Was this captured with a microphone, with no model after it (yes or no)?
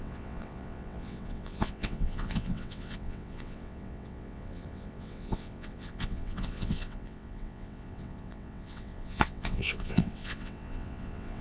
no